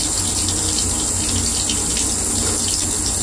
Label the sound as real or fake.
real